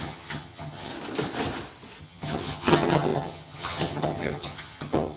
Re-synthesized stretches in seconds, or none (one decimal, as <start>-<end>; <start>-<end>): 0.0-0.9; 2.0-5.2